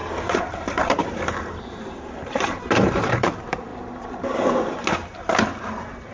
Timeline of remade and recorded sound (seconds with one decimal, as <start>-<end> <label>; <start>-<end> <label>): 0.0-3.7 remade; 3.7-6.1 recorded